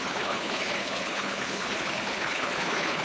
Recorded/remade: remade